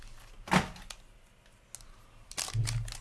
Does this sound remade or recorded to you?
recorded